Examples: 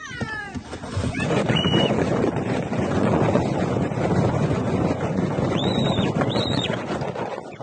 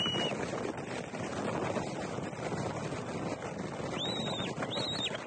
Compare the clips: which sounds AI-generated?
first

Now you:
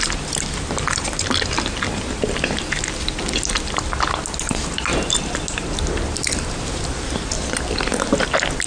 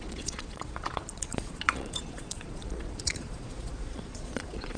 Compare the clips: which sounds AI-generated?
second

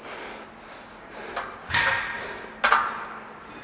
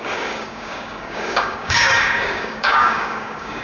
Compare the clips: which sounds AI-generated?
second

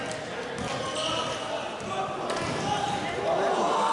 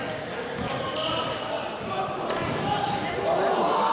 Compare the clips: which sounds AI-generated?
second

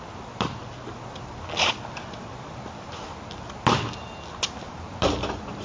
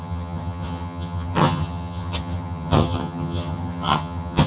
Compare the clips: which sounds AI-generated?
second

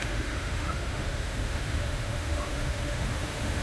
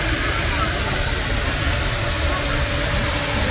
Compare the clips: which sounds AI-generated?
first